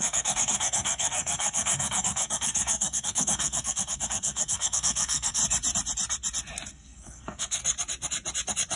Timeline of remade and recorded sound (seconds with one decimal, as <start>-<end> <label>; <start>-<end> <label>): 0.0-5.4 remade; 5.4-6.7 recorded; 6.7-7.6 remade; 7.6-8.8 recorded